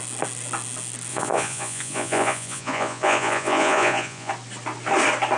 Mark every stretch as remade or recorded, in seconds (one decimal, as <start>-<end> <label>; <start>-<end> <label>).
0.0-1.1 recorded; 1.1-4.3 remade; 4.3-5.4 recorded